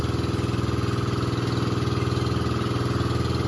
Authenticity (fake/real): real